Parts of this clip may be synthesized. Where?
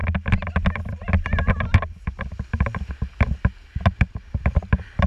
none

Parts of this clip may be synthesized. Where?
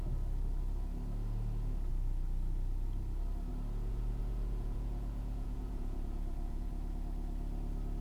3.9-6.7 (vocoder, Vocos)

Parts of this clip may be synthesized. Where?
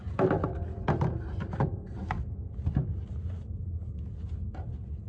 none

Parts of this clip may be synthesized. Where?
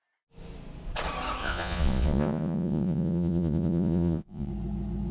1.4-4.5 (vocoder, Vocos)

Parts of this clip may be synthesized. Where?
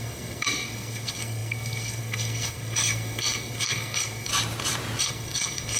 0.0-4.3 (codec, SNAC); 5.0-5.8